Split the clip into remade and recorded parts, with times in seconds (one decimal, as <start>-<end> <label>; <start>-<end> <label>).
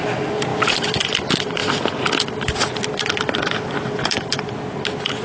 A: 0.0-5.2 recorded